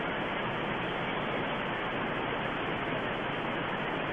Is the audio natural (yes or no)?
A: yes